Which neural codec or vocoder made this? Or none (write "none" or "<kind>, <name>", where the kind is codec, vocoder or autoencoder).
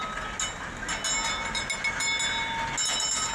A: none